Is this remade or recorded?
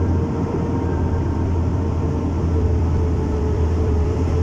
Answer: remade